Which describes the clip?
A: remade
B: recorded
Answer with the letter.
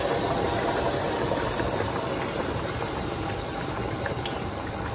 A